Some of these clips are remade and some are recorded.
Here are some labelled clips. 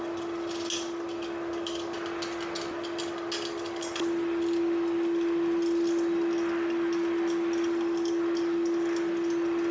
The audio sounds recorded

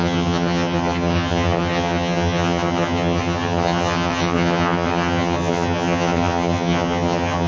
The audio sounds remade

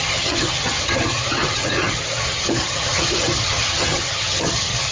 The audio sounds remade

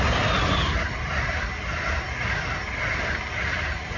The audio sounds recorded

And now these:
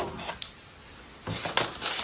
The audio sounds recorded